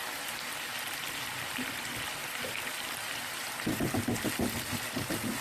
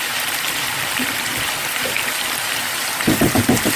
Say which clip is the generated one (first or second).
second